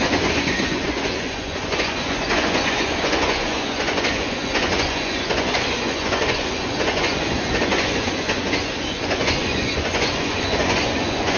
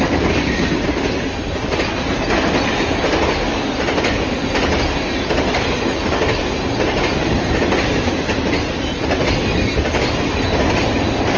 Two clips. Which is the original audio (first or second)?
second